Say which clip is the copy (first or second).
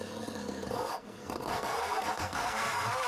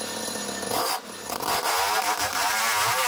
first